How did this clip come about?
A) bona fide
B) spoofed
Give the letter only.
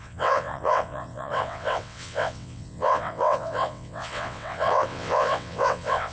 B